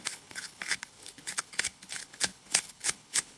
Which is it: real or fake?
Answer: fake